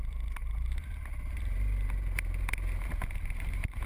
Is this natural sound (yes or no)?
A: no